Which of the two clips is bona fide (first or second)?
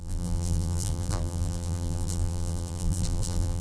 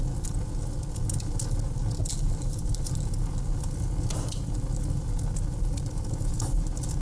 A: second